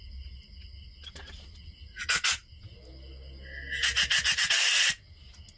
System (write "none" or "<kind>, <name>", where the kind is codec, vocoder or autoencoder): none